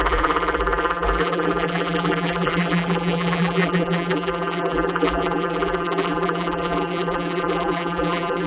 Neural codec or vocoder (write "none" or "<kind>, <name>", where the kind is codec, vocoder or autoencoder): vocoder, BigVGAN v2